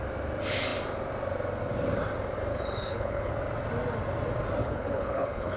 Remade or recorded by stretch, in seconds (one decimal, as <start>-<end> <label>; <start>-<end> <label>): 0.0-2.5 recorded; 2.5-3.3 remade; 3.3-4.6 recorded; 4.6-5.6 remade